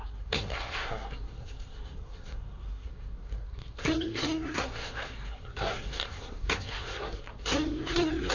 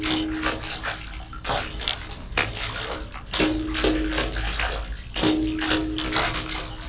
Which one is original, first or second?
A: second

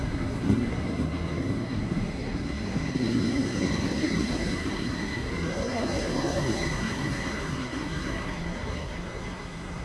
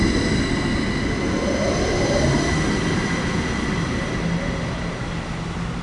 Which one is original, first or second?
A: second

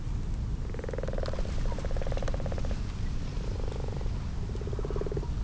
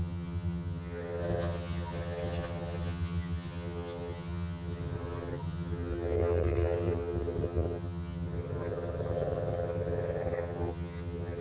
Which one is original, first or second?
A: first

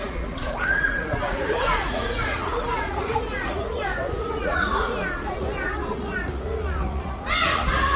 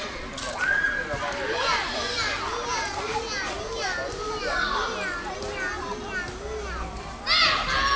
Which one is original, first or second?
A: second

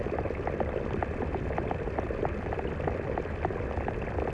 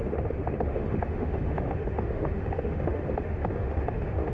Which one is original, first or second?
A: first